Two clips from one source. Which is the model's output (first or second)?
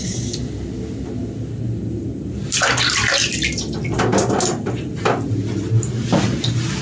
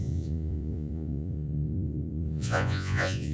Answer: second